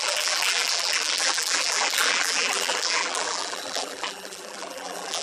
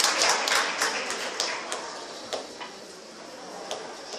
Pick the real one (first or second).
second